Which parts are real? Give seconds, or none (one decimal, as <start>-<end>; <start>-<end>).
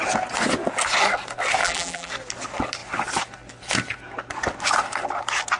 0.0-1.6; 2.1-5.6